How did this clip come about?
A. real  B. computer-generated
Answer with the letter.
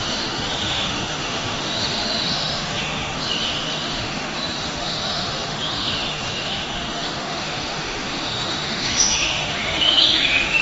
B